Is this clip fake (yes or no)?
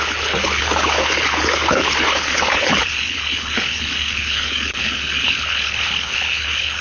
yes